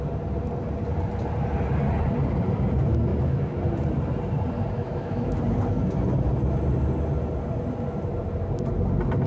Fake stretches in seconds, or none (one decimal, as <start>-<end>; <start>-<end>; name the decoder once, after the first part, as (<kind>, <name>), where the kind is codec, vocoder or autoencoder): 3.1-3.6 (autoencoder, DAC-VAE); 4.8-5.4